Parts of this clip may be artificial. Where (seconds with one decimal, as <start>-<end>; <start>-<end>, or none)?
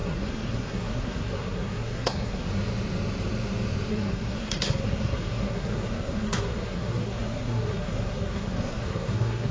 0.0-2.5; 3.9-9.5